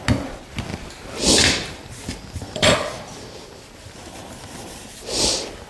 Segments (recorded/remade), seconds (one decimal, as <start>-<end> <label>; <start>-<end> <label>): 0.0-0.7 recorded; 0.7-4.1 remade; 4.1-5.7 recorded